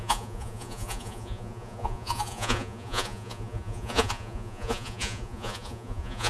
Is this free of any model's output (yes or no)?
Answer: no